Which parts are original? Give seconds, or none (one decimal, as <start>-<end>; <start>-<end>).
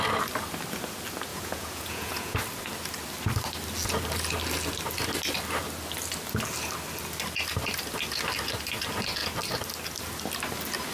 0.0-1.3; 2.4-10.9